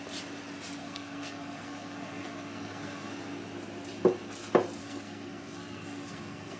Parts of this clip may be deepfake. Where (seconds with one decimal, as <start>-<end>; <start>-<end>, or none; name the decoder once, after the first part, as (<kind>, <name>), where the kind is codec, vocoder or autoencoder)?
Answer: 0.8-3.1 (codec, SNAC); 4.8-6.6